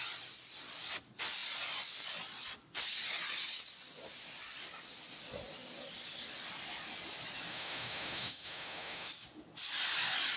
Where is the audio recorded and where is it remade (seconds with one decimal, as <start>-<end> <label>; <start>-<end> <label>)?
0.0-7.5 recorded; 7.5-9.1 remade; 9.1-10.4 recorded